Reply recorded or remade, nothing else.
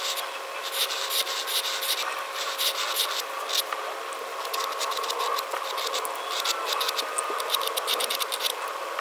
recorded